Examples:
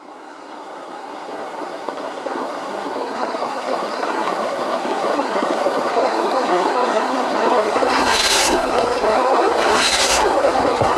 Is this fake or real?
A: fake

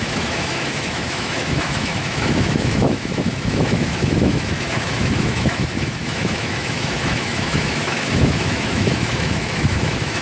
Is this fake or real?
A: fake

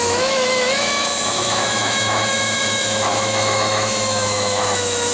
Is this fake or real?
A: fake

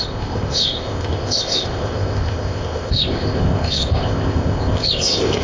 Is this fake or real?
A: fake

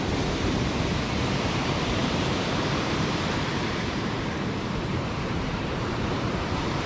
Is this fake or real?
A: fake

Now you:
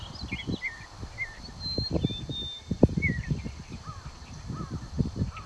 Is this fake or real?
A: real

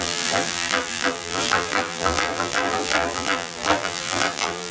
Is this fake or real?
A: fake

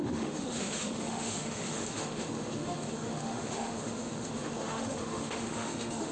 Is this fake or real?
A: fake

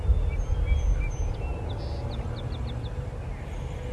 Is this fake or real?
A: real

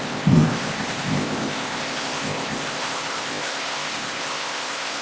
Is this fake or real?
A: fake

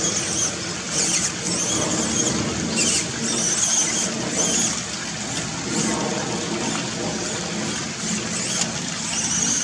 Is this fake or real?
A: real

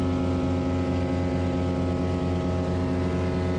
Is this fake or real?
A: real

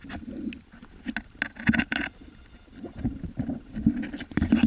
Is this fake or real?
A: real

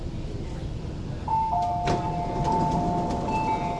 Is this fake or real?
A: real